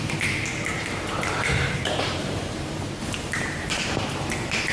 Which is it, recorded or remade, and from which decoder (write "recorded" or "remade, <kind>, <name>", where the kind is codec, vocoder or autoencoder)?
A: remade, vocoder, BigVGAN v2